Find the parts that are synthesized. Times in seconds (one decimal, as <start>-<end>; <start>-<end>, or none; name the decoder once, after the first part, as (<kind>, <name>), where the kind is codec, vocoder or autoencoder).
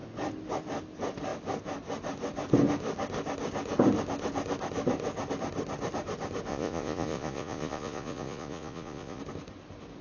6.5-9.2 (vocoder, Vocos)